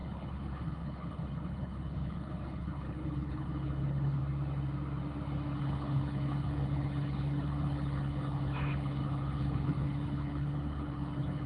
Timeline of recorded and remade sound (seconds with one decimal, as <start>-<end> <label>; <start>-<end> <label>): 0.0-4.2 remade; 4.2-5.6 recorded; 5.6-11.5 remade